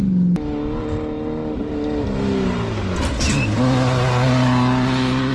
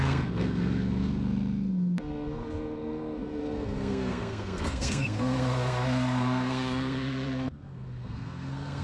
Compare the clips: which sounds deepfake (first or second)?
second